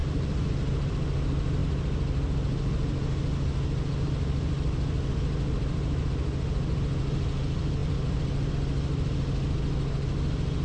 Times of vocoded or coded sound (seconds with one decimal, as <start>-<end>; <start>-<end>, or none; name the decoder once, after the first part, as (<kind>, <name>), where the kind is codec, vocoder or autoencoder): 0.0-0.9 (vocoder, BigVGAN v2); 7.8-8.5

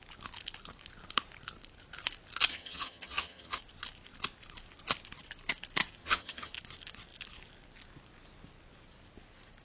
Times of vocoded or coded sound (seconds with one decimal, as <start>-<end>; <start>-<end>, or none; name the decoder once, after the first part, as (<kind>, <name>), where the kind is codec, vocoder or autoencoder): 2.5-3.6 (vocoder, HiFi-GAN); 6.0-6.5